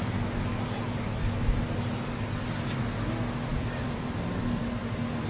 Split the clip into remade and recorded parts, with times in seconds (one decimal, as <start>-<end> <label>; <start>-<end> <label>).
0.0-3.5 recorded; 3.5-4.3 remade; 4.3-5.3 recorded